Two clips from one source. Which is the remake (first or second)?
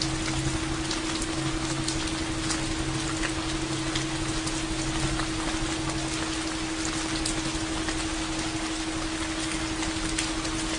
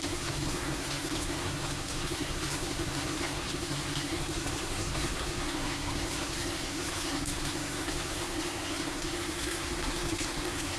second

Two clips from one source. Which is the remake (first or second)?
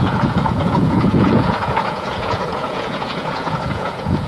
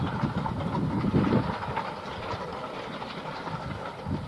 first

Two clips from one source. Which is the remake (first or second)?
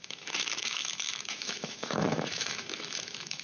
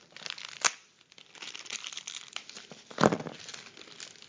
first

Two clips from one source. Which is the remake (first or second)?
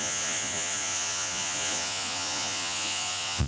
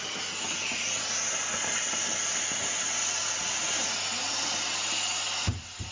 first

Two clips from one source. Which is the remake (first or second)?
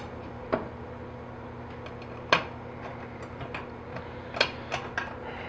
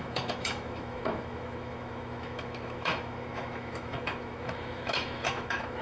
second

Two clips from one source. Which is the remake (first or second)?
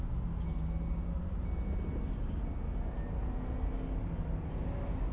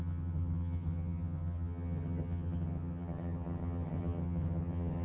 second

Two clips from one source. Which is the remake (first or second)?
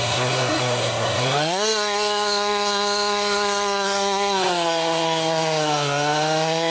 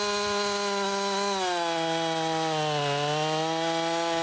first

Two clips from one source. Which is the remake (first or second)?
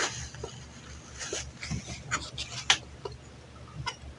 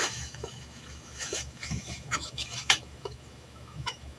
second